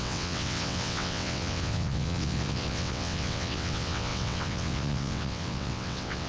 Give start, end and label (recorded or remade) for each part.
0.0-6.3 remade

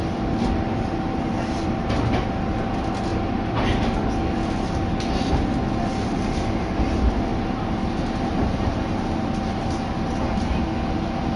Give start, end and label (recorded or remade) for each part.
0.0-11.4 recorded

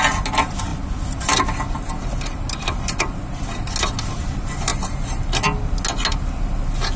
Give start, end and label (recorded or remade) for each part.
0.0-7.0 recorded

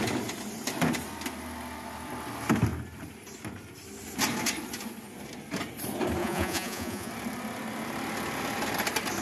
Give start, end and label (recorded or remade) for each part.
0.0-6.2 recorded; 6.2-7.1 remade; 7.1-9.2 recorded

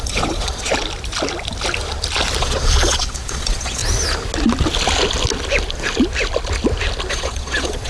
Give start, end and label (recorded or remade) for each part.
0.0-0.7 remade; 0.7-2.4 recorded; 2.4-3.8 remade; 3.8-7.1 recorded; 7.1-7.9 remade

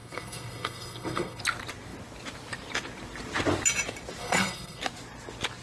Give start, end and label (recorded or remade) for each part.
0.0-1.4 remade; 1.4-4.2 recorded; 4.2-4.8 remade; 4.8-5.6 recorded

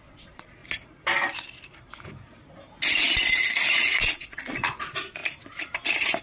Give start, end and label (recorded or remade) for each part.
0.0-0.6 remade; 0.6-3.7 recorded; 3.7-5.2 remade; 5.2-6.2 recorded